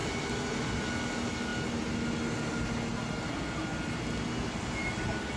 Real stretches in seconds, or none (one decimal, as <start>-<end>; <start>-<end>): 0.0-5.4